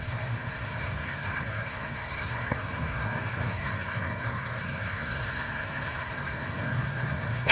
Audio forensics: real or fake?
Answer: fake